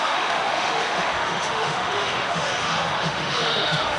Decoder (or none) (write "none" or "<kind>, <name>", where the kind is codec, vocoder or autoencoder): autoencoder, DAC-VAE